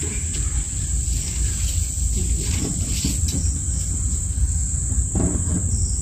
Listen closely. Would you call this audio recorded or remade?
recorded